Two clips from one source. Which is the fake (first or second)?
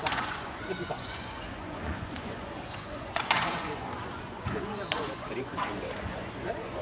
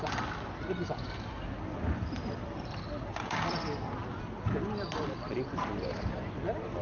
first